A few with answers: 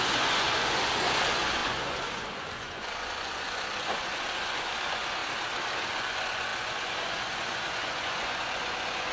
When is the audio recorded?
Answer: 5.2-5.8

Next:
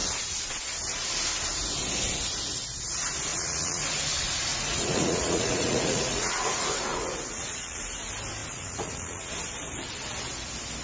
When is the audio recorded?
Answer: 0.0-3.3; 4.0-4.5; 7.8-8.4; 9.3-10.8

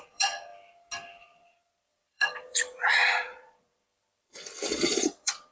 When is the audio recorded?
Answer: 0.5-1.2; 3.9-4.7

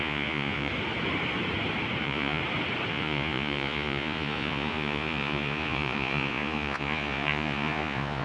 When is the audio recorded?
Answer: 0.7-2.0; 2.4-2.9

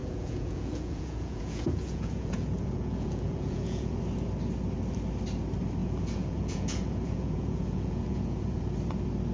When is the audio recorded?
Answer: 4.0-5.8; 8.6-9.3